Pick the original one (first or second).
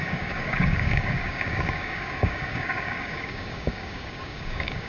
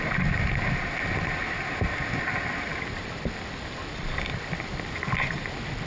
second